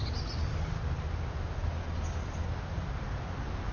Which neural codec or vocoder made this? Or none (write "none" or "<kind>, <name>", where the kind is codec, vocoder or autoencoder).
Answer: none